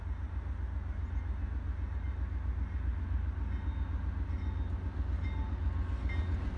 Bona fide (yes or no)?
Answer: yes